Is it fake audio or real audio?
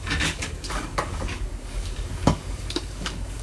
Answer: fake